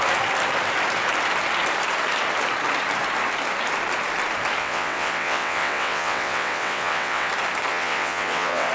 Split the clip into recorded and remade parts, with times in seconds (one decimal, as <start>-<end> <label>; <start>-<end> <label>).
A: 0.0-4.6 recorded; 4.6-7.3 remade; 7.3-7.7 recorded; 7.7-8.7 remade